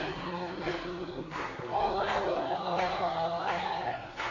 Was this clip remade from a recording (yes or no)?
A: yes